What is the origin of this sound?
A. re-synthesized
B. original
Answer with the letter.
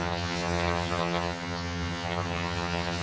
A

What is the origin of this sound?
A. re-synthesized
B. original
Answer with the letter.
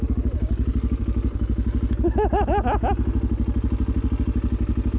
B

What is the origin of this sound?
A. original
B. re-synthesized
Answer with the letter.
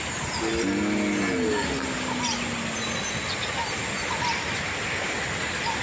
A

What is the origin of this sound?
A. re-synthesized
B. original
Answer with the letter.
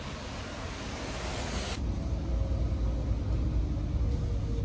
B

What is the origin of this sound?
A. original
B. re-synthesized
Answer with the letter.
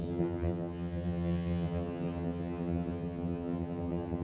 B